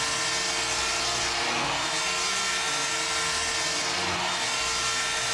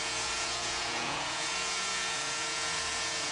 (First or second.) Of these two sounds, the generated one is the second